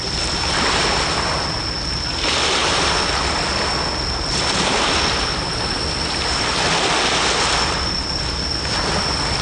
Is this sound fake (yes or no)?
no